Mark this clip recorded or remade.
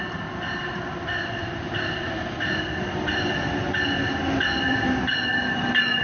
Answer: recorded